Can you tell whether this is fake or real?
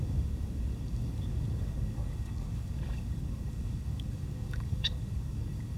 fake